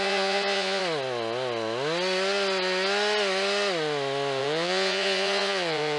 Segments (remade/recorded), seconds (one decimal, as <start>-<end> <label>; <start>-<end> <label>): 0.0-0.8 remade; 0.8-4.4 recorded; 4.4-6.0 remade